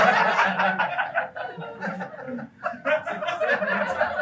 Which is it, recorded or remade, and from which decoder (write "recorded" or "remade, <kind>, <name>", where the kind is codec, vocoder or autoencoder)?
recorded